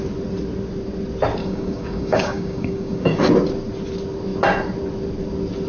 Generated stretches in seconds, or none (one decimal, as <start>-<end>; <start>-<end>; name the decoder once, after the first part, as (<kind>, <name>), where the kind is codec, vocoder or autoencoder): 1.4-3.2 (codec, DAC)

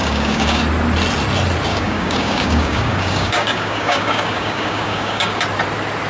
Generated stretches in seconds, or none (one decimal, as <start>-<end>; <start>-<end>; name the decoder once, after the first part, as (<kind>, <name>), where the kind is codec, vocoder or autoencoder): 0.0-0.6 (codec, DAC); 1.7-5.4

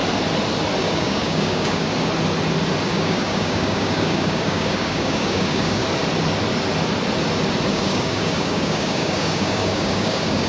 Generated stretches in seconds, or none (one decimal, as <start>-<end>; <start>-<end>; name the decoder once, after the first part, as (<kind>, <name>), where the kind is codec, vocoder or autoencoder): 0.8-1.9 (codec, DAC); 2.8-5.8; 7.7-10.5

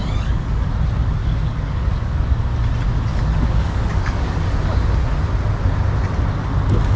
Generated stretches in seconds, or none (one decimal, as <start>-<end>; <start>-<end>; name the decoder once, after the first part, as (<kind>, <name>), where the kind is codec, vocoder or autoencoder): 0.0-0.7 (codec, DAC); 1.2-2.6; 3.1-4.4

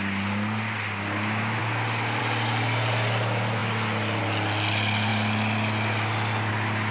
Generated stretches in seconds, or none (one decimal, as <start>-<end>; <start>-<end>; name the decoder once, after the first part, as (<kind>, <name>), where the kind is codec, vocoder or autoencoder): none

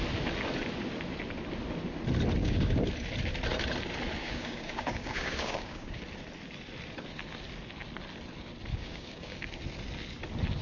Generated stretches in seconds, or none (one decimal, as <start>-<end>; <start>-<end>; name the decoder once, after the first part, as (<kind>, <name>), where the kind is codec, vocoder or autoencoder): 2.4-2.9 (codec, DAC); 4.2-6.0; 8.7-9.5